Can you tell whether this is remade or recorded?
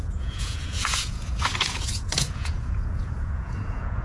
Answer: remade